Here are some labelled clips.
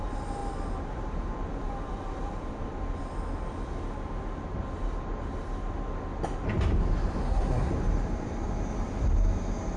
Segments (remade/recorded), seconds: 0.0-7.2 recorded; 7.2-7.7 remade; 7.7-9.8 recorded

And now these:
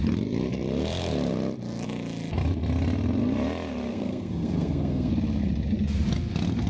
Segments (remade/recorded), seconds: 0.0-3.9 recorded; 3.9-5.1 remade; 5.1-6.7 recorded

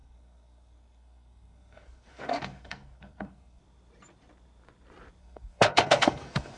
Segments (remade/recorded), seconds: 0.0-3.6 remade; 3.6-5.2 recorded; 5.2-6.6 remade

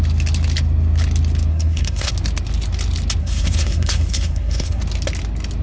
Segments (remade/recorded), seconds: 0.0-1.5 recorded; 1.5-2.1 remade; 2.1-3.2 recorded; 3.2-4.8 remade; 4.8-5.6 recorded

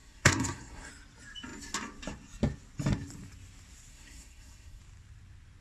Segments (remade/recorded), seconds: 0.0-0.9 remade; 0.9-3.9 recorded; 3.9-4.8 remade; 4.8-5.6 recorded

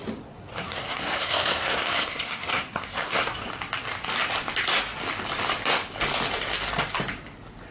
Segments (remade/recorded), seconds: 0.0-0.5 recorded; 0.5-3.4 remade; 3.4-7.7 recorded